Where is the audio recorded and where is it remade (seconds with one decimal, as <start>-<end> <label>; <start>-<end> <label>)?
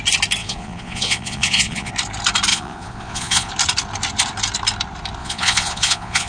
0.0-0.4 recorded; 0.4-1.9 remade; 1.9-2.5 recorded; 2.5-3.5 remade; 3.5-5.2 recorded; 5.2-6.3 remade